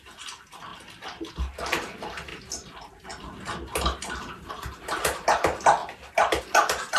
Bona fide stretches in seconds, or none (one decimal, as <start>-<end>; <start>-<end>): 0.7-1.3; 2.3-4.5